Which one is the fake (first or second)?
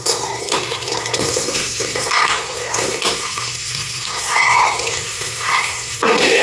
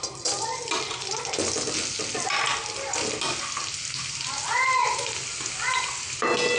first